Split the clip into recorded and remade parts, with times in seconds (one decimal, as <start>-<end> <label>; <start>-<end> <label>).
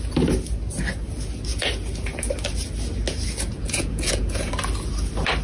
0.0-3.5 recorded; 3.5-4.5 remade; 4.5-5.4 recorded